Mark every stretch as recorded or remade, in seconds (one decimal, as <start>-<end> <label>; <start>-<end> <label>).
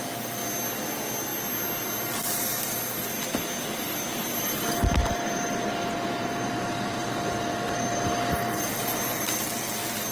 0.0-5.0 recorded; 5.0-8.8 remade; 8.8-10.1 recorded